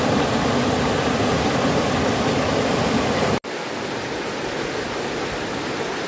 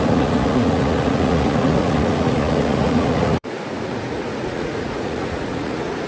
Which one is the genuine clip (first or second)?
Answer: first